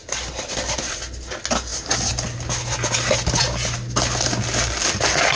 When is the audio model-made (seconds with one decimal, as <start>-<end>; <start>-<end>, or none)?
none